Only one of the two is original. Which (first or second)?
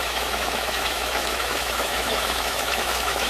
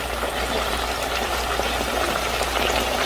second